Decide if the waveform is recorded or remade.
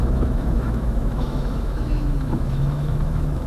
remade